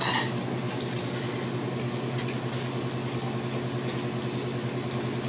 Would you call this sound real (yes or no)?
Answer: yes